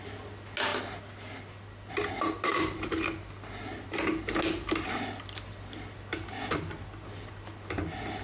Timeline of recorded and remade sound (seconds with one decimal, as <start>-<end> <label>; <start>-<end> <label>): 0.0-8.2 recorded